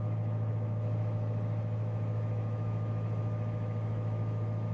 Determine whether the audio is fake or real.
fake